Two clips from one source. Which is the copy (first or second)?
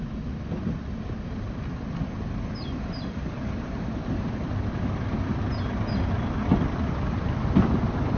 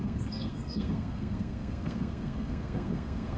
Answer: second